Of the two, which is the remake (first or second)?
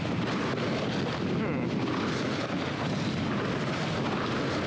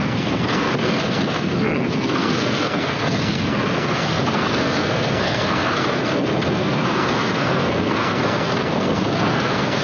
second